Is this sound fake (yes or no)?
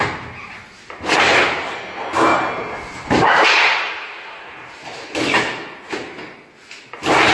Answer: no